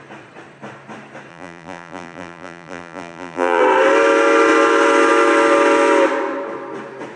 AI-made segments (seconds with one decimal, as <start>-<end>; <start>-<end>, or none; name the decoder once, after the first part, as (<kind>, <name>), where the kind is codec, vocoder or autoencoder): 1.3-3.6 (vocoder, BigVGAN v2)